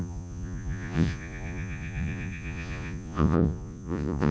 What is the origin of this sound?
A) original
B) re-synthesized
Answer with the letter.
B